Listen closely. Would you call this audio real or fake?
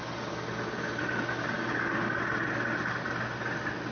real